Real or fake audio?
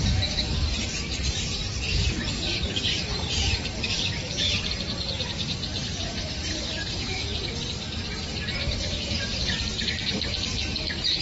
fake